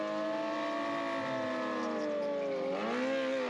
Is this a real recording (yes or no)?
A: yes